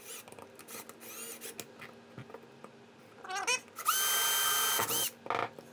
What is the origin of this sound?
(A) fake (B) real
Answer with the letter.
B